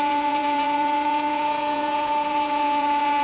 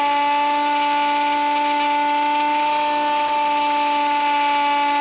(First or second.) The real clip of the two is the second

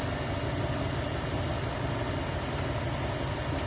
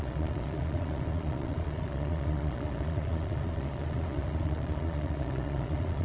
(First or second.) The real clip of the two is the first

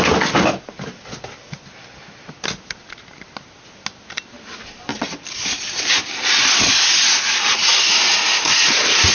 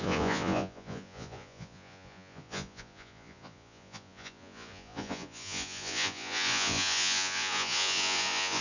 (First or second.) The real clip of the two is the first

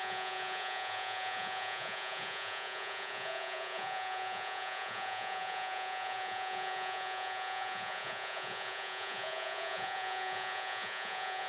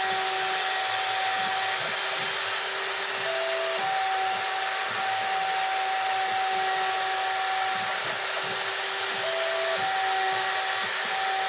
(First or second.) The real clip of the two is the second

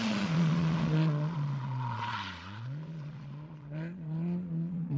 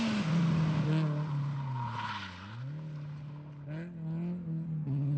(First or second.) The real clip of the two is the second